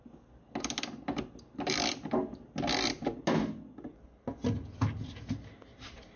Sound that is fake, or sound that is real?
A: real